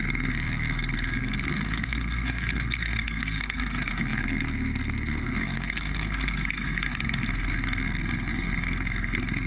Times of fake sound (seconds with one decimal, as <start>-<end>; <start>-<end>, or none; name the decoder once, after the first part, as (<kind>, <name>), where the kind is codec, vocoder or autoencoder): 0.0-9.5 (codec, SNAC)